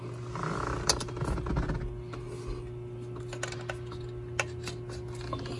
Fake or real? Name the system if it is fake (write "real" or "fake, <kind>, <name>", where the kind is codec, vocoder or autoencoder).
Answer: real